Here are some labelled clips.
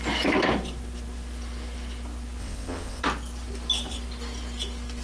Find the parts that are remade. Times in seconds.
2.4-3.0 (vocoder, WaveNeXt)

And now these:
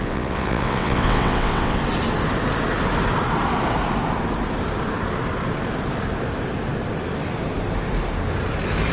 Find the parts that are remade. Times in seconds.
0.0-1.8 (vocoder, WaveNeXt)

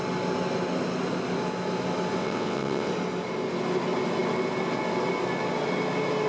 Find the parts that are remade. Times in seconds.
2.2-2.9 (vocoder, WaveNeXt)

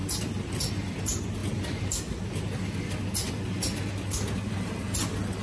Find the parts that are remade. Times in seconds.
none